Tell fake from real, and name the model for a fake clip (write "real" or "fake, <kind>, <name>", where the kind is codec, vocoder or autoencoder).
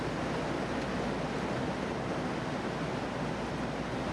real